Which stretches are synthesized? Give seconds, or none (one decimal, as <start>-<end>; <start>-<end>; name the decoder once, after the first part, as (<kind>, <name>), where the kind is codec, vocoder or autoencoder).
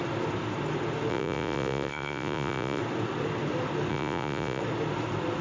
1.1-2.8 (vocoder, Vocos); 3.9-4.6